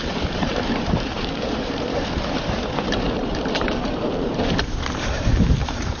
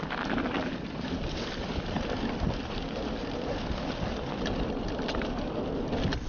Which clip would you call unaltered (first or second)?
second